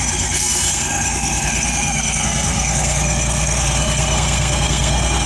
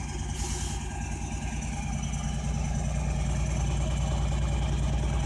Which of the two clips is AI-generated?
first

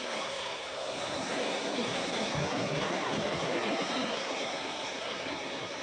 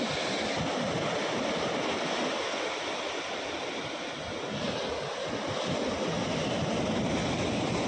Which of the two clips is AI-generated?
first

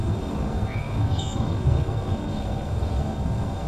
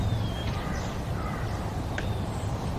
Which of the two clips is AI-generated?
first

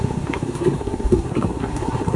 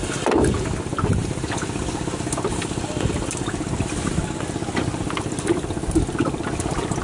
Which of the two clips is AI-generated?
first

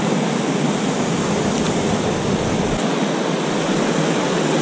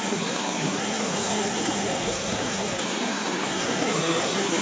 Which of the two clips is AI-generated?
second